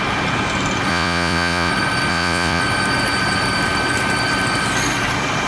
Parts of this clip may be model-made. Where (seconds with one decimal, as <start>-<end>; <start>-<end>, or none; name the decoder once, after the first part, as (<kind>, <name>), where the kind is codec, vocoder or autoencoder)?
0.9-1.7 (vocoder, Vocos); 2.1-2.6